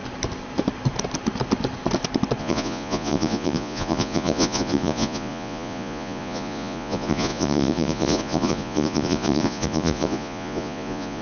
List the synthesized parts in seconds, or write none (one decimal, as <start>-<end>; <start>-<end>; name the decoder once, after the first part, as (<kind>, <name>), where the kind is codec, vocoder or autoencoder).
2.4-11.2 (vocoder, Vocos)